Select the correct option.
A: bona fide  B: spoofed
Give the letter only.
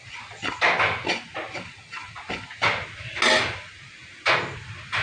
A